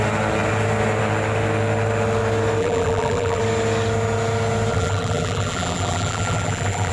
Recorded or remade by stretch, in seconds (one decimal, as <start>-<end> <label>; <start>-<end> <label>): 0.0-2.6 recorded; 2.6-3.4 remade; 3.4-4.7 recorded; 4.7-6.9 remade